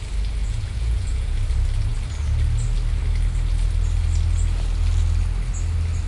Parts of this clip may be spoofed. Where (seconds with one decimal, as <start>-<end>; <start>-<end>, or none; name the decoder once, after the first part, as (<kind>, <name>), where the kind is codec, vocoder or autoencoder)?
0.4-1.4 (vocoder, Vocos)